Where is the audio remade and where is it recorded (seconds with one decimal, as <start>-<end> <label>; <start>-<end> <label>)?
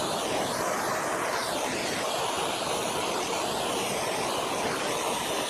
0.0-5.5 recorded